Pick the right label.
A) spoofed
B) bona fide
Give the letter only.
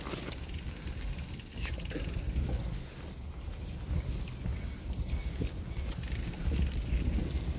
B